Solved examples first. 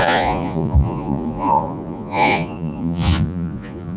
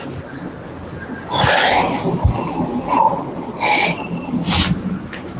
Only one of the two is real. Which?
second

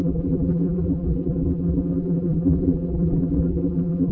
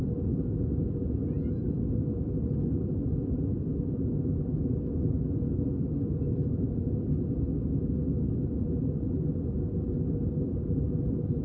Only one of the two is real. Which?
second